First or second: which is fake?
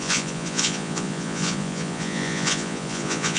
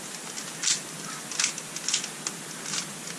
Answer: first